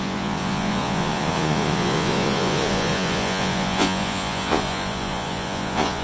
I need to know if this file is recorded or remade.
remade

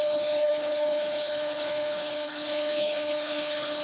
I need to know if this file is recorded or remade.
remade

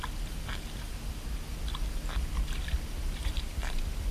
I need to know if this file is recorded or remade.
recorded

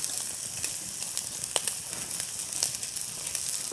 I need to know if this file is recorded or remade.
recorded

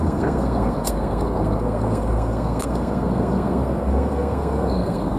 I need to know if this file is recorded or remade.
remade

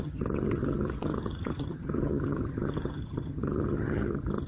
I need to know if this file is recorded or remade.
remade